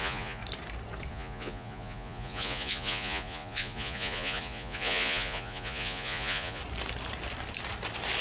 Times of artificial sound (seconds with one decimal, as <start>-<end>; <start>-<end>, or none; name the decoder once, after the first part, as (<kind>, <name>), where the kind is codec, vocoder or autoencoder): 0.0-0.4 (vocoder, Vocos); 1.1-6.6